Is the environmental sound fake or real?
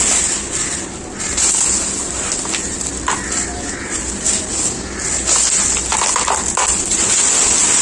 real